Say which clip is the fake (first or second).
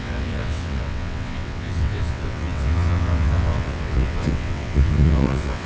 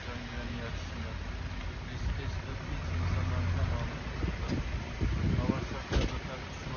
first